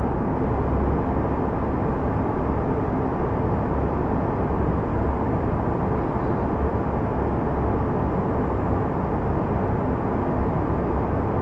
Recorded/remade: recorded